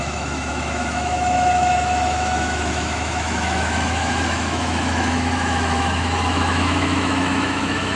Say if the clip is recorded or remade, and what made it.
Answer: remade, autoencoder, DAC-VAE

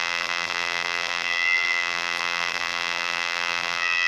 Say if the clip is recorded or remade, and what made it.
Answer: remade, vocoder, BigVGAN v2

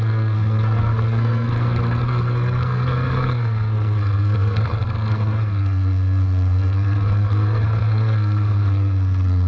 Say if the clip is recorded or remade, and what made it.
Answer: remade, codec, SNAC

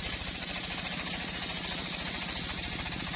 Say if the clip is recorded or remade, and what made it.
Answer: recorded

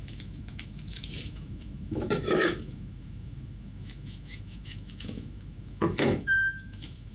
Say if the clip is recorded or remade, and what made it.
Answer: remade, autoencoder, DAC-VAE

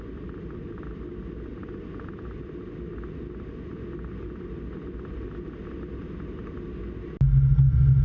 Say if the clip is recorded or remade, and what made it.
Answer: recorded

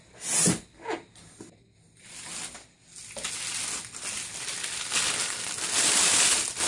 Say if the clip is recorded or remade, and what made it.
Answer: recorded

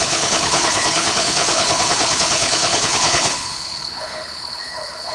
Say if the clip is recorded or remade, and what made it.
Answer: remade, codec, HILCodec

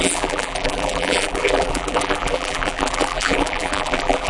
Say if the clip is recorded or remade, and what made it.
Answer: remade, vocoder, BigVGAN v2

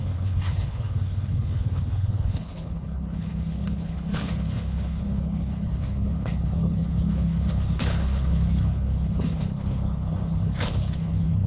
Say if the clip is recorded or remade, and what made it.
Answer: remade, codec, HILCodec